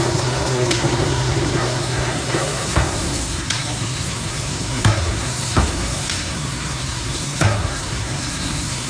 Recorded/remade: remade